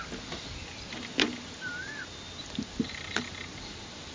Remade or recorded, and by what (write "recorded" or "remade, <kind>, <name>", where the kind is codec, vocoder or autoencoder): recorded